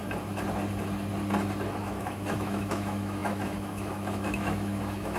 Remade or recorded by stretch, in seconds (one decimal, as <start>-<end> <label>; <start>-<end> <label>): 0.0-1.8 recorded; 1.8-5.2 remade